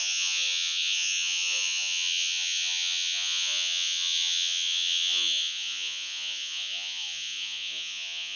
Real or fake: fake